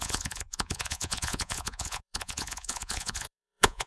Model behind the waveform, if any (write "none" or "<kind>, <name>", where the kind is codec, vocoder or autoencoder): vocoder, Vocos